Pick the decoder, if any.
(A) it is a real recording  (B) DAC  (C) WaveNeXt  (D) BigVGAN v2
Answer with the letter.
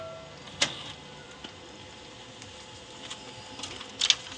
A